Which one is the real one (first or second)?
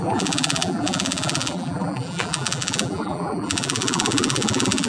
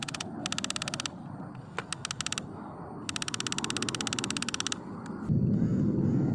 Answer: second